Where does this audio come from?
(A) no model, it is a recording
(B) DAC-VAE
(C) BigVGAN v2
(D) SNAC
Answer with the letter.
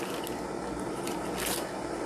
A